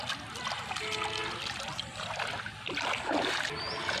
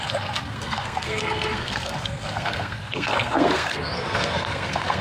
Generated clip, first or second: second